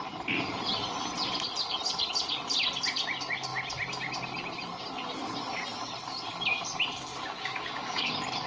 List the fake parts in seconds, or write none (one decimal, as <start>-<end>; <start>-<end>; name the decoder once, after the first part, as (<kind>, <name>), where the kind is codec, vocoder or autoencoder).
7.1-8.1 (codec, DAC)